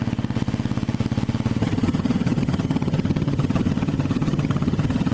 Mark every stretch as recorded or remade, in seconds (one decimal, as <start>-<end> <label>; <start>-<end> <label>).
0.0-1.6 recorded; 1.6-5.1 remade